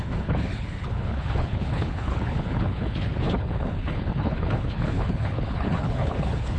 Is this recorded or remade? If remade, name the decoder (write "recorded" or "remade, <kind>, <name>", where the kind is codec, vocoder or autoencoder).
remade, codec, HILCodec